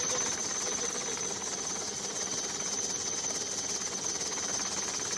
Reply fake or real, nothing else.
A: real